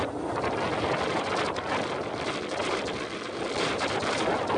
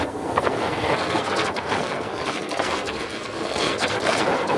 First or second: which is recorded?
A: first